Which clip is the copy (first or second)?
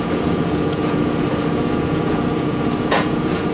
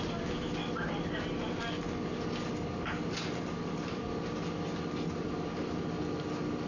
first